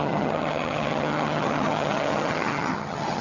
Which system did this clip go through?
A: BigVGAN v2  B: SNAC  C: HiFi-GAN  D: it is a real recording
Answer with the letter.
C